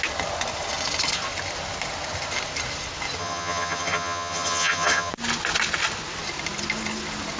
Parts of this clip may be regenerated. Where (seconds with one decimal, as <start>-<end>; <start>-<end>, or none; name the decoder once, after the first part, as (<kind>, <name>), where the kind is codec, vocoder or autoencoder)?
3.2-5.1 (vocoder, HiFi-GAN)